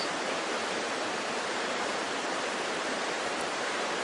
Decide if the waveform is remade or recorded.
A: remade